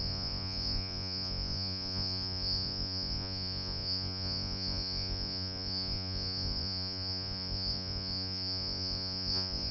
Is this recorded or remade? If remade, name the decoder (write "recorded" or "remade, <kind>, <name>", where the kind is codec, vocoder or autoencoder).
remade, vocoder, Vocos